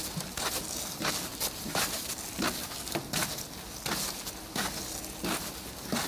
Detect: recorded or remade recorded